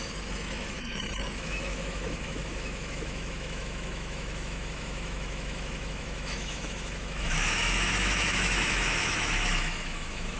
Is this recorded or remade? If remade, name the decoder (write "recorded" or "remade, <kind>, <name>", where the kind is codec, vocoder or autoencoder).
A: remade, autoencoder, DAC-VAE